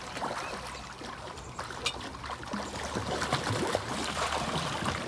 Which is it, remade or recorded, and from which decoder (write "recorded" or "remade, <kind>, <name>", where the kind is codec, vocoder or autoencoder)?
recorded